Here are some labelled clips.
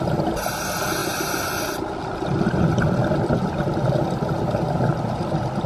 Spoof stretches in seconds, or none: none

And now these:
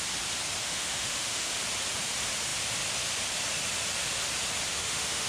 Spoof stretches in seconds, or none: 0.6-1.5 (autoencoder, DAC-VAE); 4.7-5.3

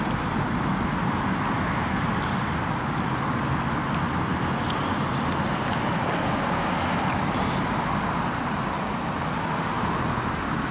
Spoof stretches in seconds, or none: none